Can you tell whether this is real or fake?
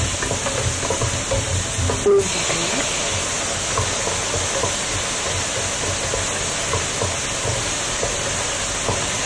real